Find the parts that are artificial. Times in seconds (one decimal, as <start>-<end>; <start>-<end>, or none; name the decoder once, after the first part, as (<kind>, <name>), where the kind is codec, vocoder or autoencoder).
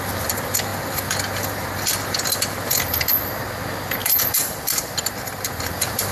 4.0-6.1 (vocoder, BigVGAN v2)